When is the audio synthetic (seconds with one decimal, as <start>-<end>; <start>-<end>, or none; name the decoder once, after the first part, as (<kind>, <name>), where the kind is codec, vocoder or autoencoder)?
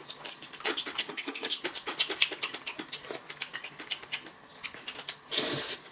1.0-1.6 (codec, SNAC)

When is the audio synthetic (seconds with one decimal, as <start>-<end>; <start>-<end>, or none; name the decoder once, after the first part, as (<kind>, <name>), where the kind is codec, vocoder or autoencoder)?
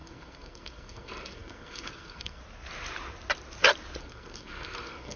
0.0-2.4 (codec, SNAC); 4.0-5.2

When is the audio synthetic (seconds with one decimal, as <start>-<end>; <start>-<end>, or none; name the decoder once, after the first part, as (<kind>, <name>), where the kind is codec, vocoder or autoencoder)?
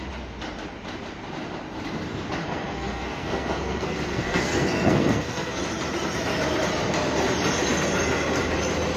2.4-5.6 (codec, SNAC)